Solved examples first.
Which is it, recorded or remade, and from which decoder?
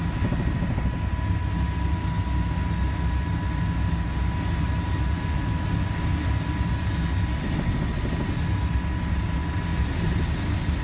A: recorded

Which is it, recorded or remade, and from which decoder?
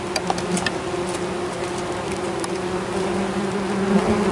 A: recorded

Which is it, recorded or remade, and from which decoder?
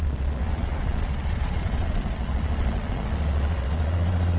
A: remade, vocoder, Vocos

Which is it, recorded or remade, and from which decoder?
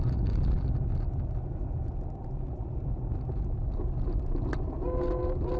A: recorded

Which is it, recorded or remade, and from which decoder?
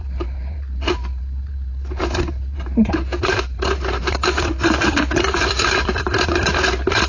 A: remade, vocoder, BigVGAN v2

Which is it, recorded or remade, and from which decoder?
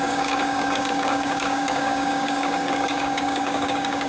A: remade, codec, DAC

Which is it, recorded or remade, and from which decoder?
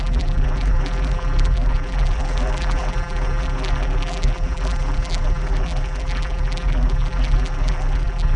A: remade, vocoder, BigVGAN v2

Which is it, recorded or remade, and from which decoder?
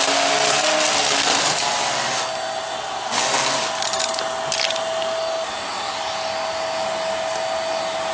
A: recorded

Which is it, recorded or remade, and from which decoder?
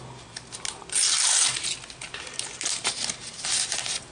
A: recorded